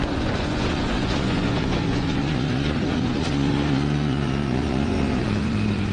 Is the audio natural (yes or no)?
no